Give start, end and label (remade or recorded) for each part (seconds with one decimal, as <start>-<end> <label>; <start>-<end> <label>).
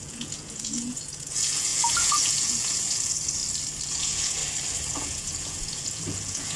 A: 0.0-3.4 remade; 3.4-3.9 recorded; 3.9-4.4 remade; 4.4-4.9 recorded; 4.9-6.6 remade